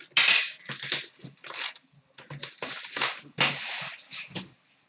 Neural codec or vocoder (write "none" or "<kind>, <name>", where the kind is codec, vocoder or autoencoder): none